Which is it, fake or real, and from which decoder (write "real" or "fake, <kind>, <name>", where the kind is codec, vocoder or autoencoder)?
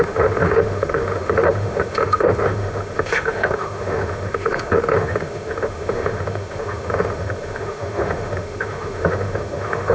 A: fake, autoencoder, DAC-VAE